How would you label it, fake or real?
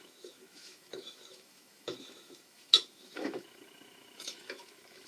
fake